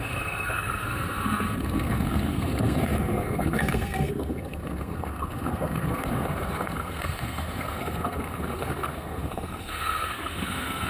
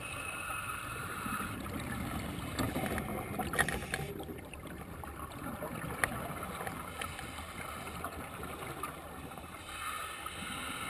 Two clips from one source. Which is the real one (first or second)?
second